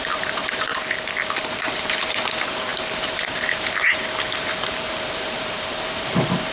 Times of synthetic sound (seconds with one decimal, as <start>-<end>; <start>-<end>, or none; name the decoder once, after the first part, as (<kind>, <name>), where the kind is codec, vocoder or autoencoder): 0.0-0.7 (vocoder, BigVGAN v2); 1.5-6.5